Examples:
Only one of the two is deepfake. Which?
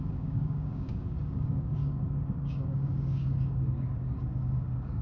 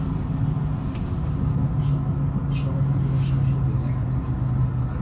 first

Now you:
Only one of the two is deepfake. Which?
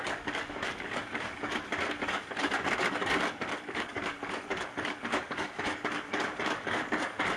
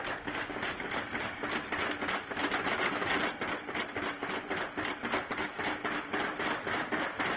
first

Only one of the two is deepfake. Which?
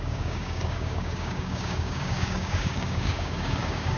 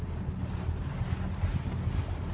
first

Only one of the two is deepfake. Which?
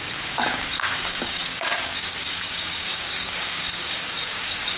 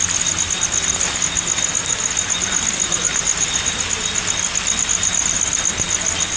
first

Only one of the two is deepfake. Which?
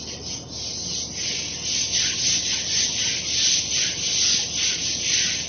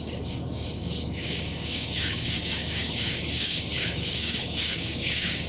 second